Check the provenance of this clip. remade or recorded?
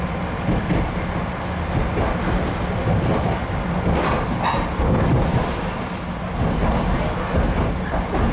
recorded